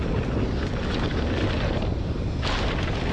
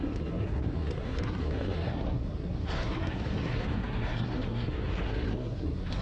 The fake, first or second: second